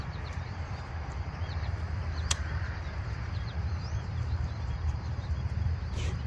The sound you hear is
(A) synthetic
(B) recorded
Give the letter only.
A